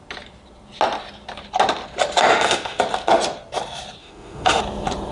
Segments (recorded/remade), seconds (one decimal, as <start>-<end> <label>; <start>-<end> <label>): 0.0-2.3 recorded; 2.3-2.8 remade; 2.8-4.0 recorded; 4.0-4.6 remade; 4.6-5.1 recorded